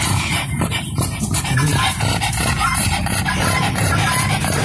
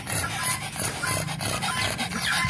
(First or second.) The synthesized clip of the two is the first